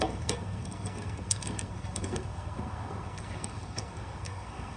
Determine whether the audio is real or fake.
fake